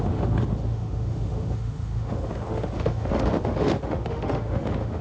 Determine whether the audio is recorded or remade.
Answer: remade